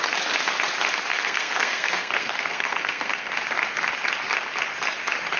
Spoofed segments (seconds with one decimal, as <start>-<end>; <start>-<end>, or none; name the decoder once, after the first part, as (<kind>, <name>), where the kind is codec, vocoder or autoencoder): 1.1-3.3 (codec, SNAC)